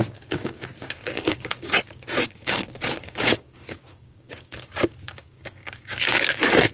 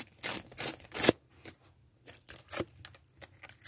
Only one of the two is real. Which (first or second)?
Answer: second